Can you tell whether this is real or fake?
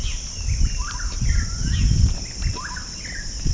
real